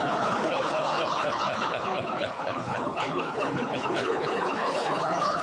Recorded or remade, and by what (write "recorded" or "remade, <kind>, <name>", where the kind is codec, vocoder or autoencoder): remade, codec, HILCodec